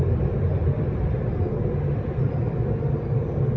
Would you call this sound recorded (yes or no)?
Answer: yes